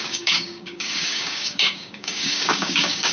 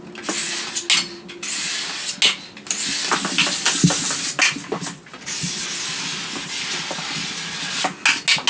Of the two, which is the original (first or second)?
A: second